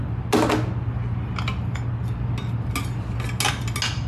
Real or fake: real